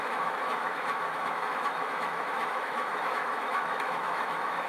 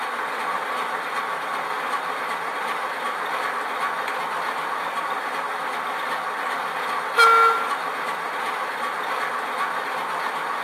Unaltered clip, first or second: second